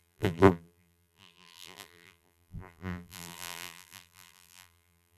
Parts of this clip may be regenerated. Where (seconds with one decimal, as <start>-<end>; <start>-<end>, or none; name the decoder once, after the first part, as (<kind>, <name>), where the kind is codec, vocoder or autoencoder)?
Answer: 0.0-5.2 (vocoder, BigVGAN v2)